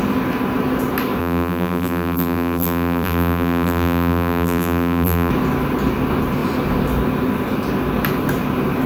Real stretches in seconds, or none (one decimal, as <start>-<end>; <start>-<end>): 0.0-1.2; 5.3-8.9